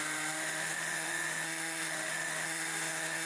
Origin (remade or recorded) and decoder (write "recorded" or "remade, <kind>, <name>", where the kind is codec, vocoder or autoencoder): remade, autoencoder, DAC-VAE